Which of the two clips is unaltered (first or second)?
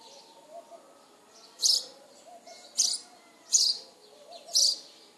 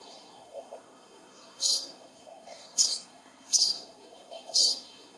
first